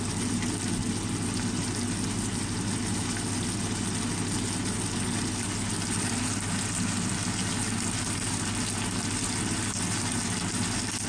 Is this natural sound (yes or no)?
yes